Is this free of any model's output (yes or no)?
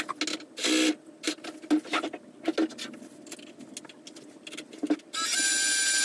yes